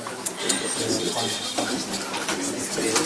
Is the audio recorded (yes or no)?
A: yes